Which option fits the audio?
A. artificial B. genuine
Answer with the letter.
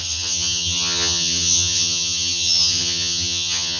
A